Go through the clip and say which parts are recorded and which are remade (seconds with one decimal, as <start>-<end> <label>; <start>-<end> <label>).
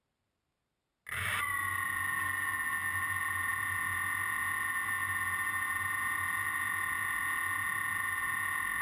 0.0-8.8 recorded